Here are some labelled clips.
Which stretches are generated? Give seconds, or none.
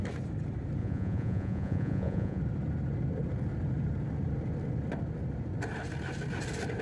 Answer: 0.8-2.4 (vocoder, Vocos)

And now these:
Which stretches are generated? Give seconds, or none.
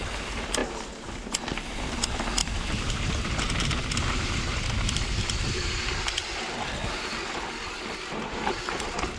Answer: 2.4-6.5 (vocoder, BigVGAN v2)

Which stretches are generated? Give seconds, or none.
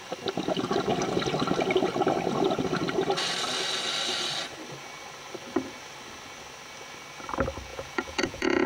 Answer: 7.7-8.7 (vocoder, Vocos)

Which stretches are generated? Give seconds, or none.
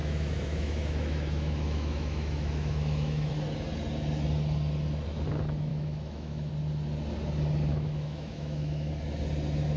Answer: 0.0-3.3 (autoencoder, DAC-VAE); 5.7-6.5; 7.7-8.9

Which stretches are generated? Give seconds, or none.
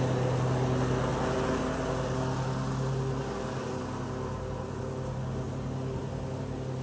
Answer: none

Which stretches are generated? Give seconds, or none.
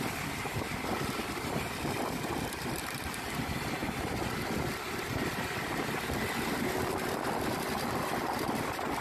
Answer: 0.0-9.0 (vocoder, BigVGAN v2)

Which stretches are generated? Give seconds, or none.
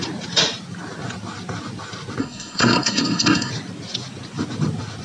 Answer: 2.2-3.5 (codec, SNAC)